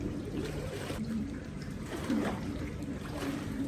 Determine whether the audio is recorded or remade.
remade